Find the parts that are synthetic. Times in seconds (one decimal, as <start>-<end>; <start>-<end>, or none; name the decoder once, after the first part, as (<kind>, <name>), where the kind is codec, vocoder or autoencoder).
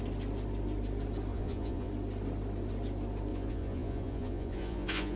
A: 1.3-1.9 (vocoder, Vocos); 3.3-5.2